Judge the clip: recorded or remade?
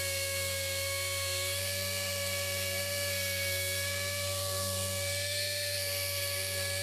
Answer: remade